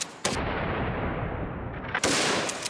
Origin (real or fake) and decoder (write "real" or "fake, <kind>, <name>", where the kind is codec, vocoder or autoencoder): real